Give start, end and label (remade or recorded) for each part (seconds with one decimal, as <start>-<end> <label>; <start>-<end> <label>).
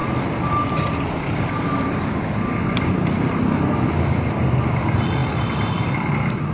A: 0.0-6.5 recorded